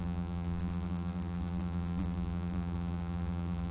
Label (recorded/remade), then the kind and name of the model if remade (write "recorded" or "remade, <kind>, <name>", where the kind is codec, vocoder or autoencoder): remade, vocoder, BigVGAN v2